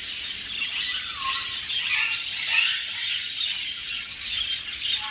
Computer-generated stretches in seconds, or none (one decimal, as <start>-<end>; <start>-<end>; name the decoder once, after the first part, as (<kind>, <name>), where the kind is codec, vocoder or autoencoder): 3.8-4.4 (vocoder, WaveNeXt)